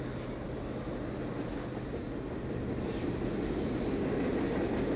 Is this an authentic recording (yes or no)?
yes